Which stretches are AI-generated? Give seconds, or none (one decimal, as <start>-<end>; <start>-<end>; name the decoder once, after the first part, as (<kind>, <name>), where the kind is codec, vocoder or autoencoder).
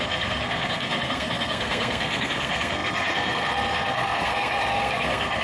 0.0-5.4 (codec, SNAC)